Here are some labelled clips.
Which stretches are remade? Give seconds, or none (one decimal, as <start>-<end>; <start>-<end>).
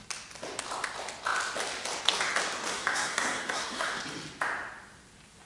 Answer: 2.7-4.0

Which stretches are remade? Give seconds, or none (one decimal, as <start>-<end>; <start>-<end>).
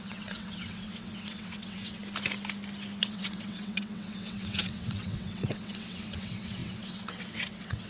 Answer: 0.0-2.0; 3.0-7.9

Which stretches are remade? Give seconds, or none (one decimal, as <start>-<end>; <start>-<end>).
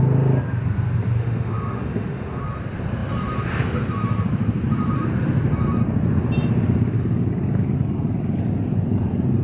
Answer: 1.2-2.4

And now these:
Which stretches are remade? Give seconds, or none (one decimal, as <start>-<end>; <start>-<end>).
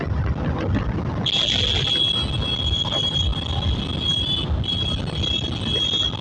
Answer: none